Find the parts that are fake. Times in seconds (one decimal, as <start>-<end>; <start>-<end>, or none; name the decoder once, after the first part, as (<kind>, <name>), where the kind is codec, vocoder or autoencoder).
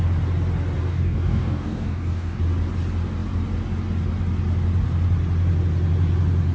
0.9-2.4 (codec, DAC)